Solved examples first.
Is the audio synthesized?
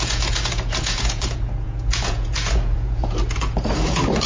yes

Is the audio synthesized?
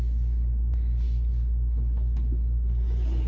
no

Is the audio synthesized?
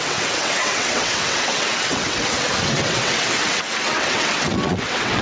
yes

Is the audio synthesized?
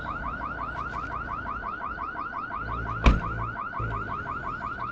no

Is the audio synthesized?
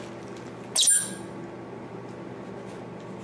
no